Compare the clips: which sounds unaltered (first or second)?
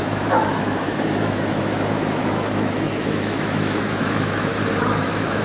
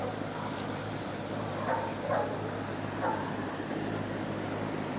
second